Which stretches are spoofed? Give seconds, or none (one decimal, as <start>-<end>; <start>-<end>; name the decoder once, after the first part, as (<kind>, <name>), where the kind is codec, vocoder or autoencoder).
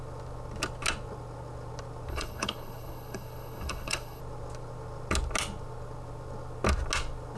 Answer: 2.1-4.2 (codec, HILCodec)